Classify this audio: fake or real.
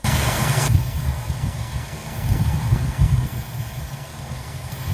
fake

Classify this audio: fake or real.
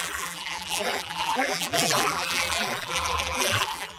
fake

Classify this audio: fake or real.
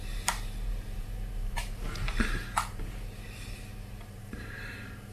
fake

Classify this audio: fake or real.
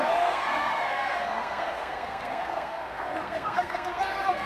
fake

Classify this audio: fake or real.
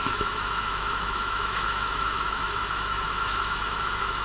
fake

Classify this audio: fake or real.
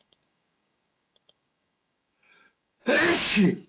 fake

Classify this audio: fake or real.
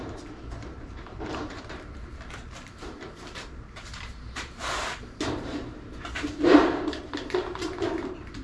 fake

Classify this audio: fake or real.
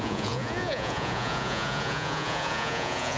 fake